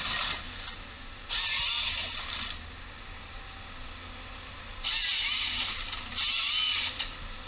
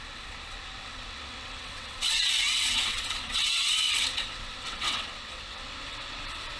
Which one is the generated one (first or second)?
second